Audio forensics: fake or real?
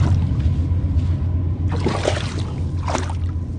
real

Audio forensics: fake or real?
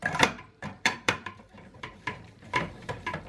fake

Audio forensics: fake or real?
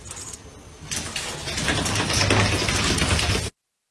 real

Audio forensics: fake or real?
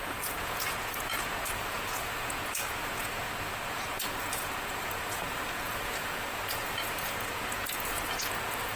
fake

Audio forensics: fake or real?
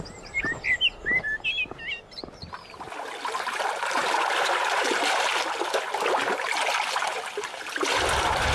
real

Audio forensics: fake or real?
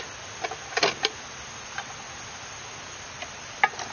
real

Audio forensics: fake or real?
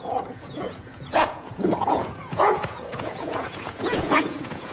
fake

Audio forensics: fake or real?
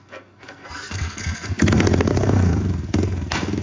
fake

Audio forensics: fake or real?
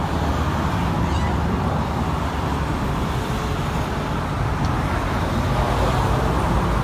real